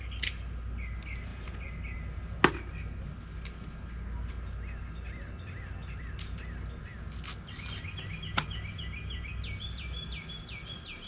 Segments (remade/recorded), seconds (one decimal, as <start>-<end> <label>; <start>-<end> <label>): 0.0-11.1 recorded